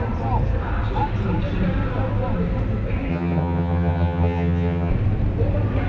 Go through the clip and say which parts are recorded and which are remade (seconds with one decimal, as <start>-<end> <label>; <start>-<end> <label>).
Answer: 0.0-3.1 recorded; 3.1-4.9 remade; 4.9-5.9 recorded